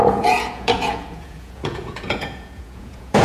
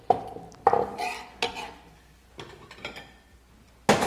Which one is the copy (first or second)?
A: first